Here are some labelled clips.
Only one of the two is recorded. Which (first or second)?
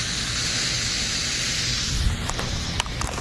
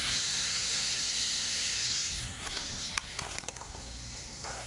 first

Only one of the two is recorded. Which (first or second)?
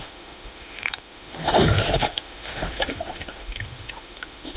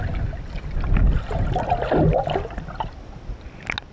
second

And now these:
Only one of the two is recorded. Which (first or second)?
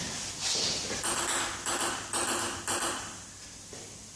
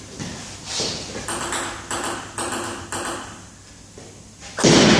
second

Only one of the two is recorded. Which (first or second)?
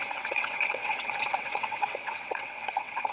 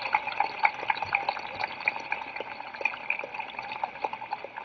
second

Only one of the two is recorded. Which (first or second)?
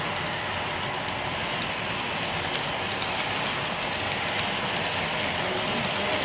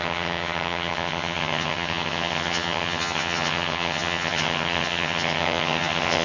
first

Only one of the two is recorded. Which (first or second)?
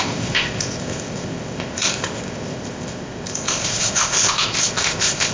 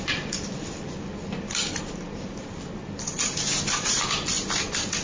second